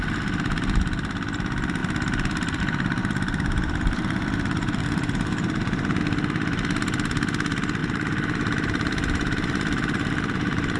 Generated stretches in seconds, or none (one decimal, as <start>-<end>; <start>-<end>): 3.0-6.0; 7.8-10.8